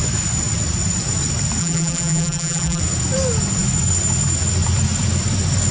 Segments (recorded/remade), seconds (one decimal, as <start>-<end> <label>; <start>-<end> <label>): 0.0-1.6 recorded; 1.6-2.8 remade; 2.8-5.7 recorded